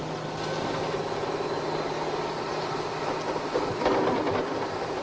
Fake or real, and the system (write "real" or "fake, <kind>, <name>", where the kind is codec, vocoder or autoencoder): real